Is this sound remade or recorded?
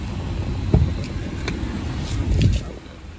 recorded